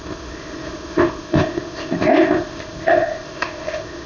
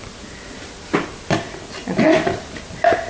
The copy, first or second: first